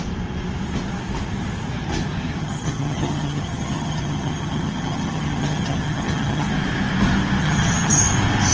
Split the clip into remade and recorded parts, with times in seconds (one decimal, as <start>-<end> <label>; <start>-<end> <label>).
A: 0.0-2.4 recorded; 2.4-6.5 remade; 6.5-7.4 recorded; 7.4-8.0 remade; 8.0-8.5 recorded